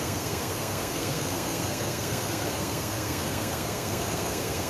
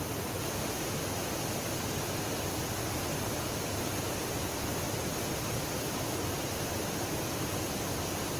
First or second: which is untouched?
second